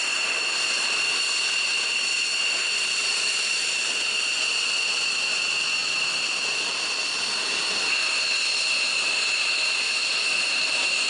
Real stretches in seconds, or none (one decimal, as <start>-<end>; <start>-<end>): 0.0-11.1